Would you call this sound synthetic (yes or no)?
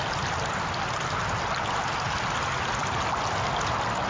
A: no